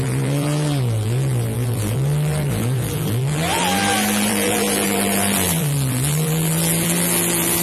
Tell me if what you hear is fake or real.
fake